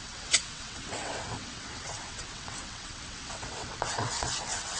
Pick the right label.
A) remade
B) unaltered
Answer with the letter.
A